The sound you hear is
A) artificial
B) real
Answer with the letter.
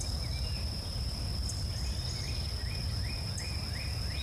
B